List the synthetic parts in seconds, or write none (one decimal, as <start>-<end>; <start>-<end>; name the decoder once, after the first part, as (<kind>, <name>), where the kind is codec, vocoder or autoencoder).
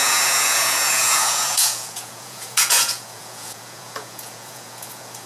0.0-5.3 (vocoder, Vocos)